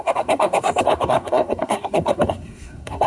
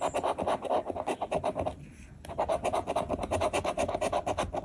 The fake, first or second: first